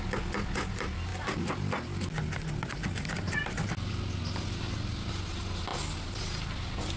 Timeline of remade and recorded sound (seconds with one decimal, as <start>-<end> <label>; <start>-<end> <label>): 0.0-7.0 recorded